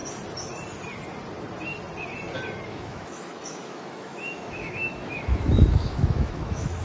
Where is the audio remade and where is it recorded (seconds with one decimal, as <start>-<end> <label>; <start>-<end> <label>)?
0.0-2.7 recorded; 2.7-6.8 remade